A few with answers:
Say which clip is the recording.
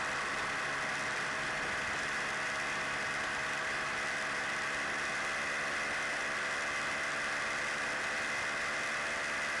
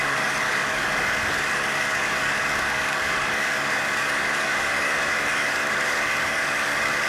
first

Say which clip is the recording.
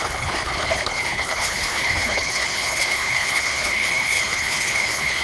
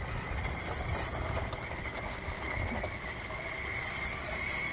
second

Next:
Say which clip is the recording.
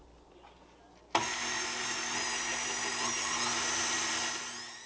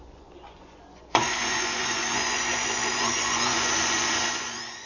first